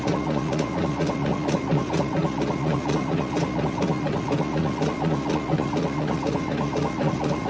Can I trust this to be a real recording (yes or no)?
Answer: no